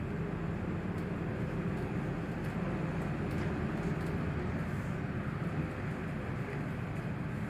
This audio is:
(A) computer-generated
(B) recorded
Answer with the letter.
B